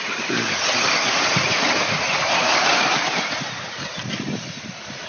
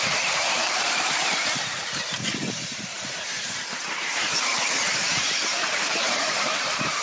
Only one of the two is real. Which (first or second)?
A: first